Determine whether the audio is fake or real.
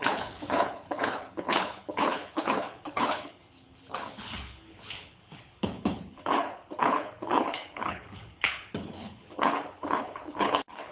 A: fake